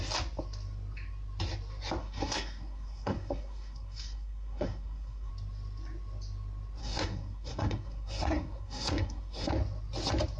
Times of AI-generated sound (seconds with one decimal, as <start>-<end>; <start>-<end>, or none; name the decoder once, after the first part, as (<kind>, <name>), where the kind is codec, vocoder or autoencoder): 2.0-5.3 (codec, SNAC); 6.8-9.5